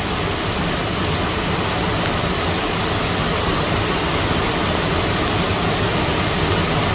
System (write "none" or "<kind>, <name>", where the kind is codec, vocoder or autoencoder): none